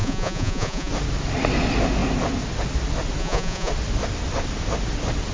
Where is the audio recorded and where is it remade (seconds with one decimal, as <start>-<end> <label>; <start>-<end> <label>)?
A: 0.0-0.9 remade; 0.9-3.2 recorded; 3.2-3.7 remade; 3.7-5.3 recorded